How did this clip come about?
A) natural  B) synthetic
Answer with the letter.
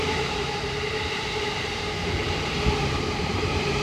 B